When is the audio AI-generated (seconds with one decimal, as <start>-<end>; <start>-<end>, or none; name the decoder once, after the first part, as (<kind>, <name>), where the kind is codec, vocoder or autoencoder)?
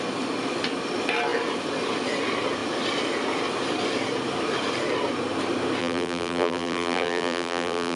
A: 5.8-8.0 (vocoder, BigVGAN v2)